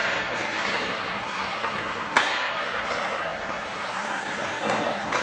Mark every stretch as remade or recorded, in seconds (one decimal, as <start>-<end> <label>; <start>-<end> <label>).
0.0-5.2 remade